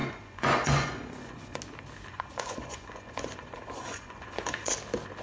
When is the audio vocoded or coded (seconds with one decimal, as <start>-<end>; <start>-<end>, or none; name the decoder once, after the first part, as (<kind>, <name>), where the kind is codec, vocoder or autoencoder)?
0.0-1.6 (vocoder, Vocos); 2.1-4.7